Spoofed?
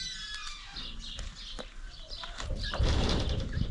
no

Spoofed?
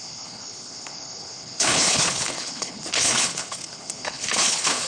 yes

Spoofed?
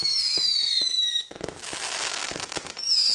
yes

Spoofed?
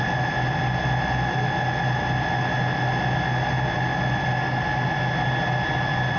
no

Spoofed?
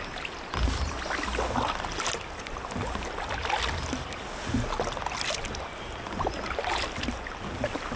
no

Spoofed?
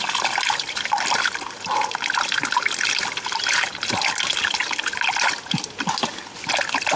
no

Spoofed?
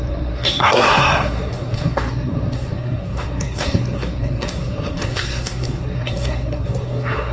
yes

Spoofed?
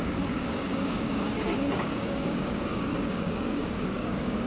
yes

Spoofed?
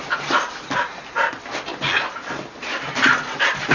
no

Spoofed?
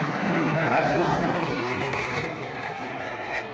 yes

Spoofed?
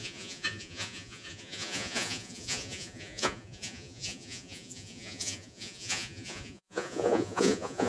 yes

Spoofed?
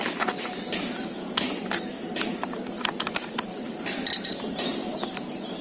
no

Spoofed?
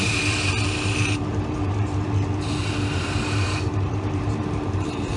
yes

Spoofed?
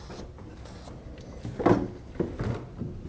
no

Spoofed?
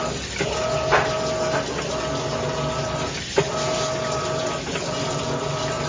no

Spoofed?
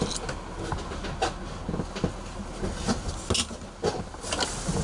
no